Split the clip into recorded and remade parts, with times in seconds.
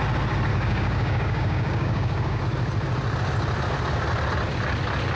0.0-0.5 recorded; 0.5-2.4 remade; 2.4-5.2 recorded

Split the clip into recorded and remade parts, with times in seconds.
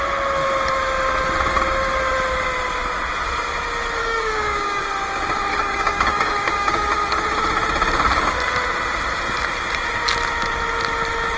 0.0-4.0 recorded; 4.0-4.8 remade; 4.8-5.5 recorded; 5.5-6.9 remade; 6.9-11.4 recorded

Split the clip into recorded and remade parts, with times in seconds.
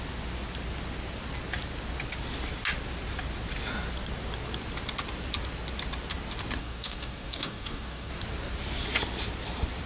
0.0-6.6 recorded; 6.6-8.1 remade; 8.1-9.9 recorded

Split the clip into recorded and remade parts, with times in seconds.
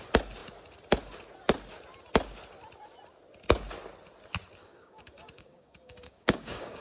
0.0-4.6 recorded; 4.6-6.8 remade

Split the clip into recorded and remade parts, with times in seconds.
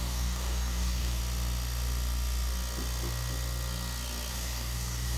0.0-1.2 remade; 1.2-4.3 recorded; 4.3-5.2 remade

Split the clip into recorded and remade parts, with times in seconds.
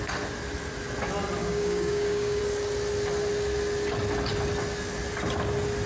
0.0-1.4 recorded; 1.4-2.4 remade; 2.4-5.9 recorded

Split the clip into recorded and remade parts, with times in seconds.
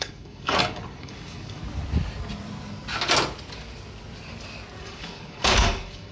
0.0-1.6 remade; 1.6-4.8 recorded; 4.8-6.1 remade